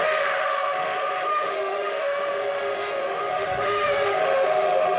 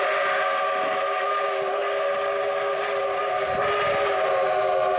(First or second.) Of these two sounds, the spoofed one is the first